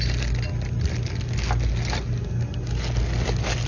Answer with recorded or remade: recorded